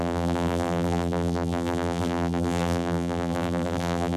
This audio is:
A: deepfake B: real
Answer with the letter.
A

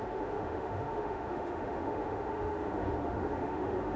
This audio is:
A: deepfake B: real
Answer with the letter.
A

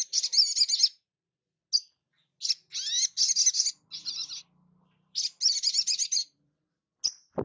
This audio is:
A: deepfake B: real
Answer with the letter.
B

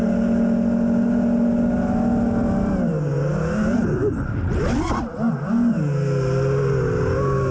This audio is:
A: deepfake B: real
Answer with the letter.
B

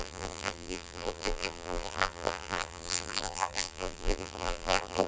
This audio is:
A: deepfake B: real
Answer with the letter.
A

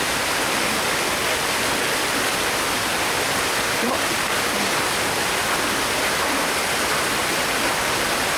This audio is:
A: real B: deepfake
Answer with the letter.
B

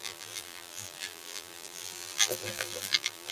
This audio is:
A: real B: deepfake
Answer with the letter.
B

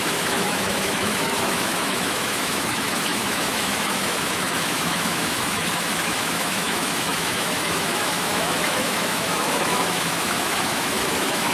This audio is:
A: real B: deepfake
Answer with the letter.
B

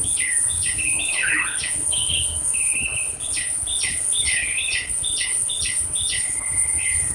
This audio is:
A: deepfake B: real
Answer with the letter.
A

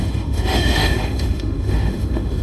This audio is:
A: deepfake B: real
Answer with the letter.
A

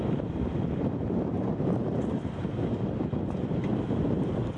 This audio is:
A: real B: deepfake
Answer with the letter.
B